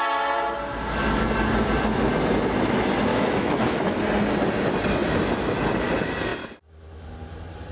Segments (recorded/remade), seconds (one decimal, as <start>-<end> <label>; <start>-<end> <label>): 0.0-3.1 recorded; 3.1-4.0 remade; 4.0-7.7 recorded